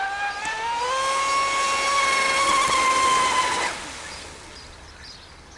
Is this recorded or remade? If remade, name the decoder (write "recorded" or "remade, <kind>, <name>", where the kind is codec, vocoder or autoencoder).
recorded